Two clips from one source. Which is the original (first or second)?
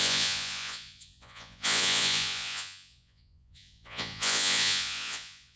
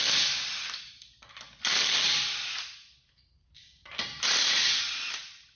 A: second